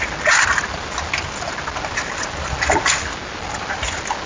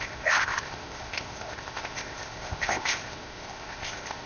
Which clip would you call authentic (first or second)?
first